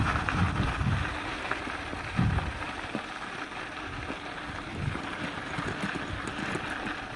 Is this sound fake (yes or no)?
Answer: no